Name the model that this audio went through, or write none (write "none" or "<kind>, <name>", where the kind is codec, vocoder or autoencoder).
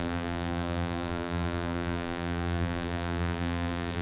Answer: vocoder, BigVGAN v2